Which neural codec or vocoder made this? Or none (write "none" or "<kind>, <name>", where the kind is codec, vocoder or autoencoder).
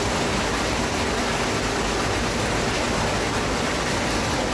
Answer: vocoder, BigVGAN v2